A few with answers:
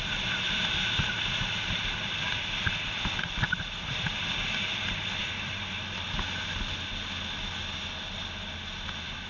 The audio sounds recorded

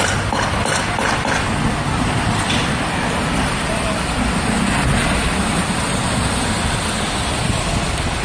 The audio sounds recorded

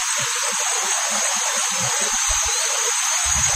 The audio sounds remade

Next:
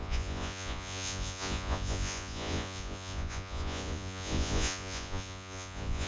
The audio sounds remade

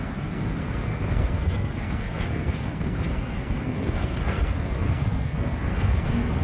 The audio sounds remade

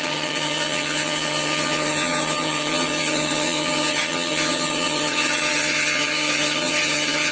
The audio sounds remade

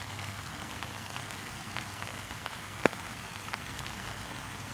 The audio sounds remade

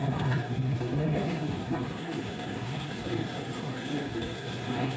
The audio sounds remade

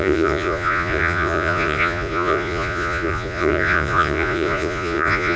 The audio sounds remade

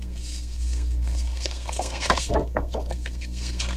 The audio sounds remade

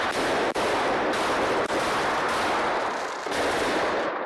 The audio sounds recorded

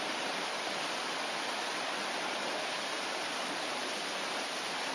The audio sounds recorded